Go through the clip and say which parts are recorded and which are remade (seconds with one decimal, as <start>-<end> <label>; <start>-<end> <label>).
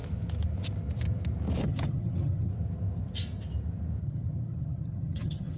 0.0-1.6 recorded; 1.6-2.5 remade; 2.5-4.0 recorded; 4.0-5.6 remade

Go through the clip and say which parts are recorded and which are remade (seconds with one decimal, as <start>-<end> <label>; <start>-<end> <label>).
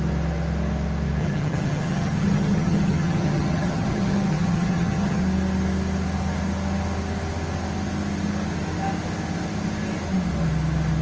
0.0-1.2 recorded; 1.2-5.2 remade; 5.2-11.0 recorded